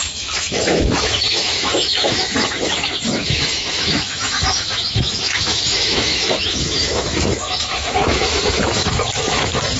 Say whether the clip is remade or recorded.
remade